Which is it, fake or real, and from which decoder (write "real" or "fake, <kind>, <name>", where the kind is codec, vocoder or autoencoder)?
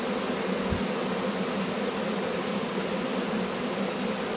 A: real